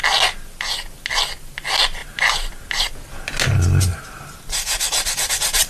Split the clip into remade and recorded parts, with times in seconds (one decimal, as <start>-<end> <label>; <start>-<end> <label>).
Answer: 0.0-2.0 recorded; 2.0-2.9 remade; 2.9-3.9 recorded; 3.9-5.7 remade